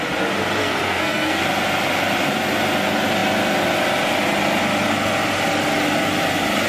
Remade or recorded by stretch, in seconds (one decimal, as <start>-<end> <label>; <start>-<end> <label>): 0.0-0.6 recorded; 0.6-1.4 remade; 1.4-6.7 recorded